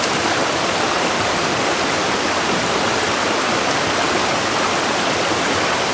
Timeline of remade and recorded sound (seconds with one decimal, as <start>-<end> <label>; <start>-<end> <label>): 0.0-5.9 recorded